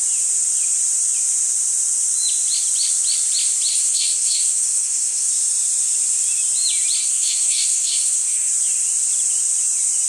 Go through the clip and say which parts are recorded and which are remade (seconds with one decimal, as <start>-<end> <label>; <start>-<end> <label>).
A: 0.0-3.7 recorded; 3.7-5.3 remade; 5.3-7.0 recorded; 7.0-8.5 remade; 8.5-10.1 recorded